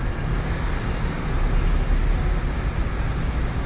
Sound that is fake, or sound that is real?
real